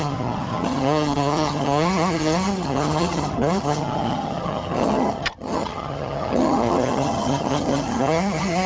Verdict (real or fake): fake